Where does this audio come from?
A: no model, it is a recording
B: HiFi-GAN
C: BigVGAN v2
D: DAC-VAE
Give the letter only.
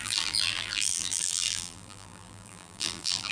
C